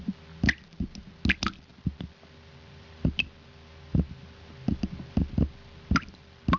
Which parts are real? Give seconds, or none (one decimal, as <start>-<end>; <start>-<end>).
0.0-6.6